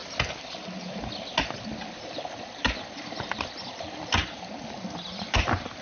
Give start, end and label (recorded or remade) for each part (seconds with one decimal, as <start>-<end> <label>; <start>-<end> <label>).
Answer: 0.0-5.8 recorded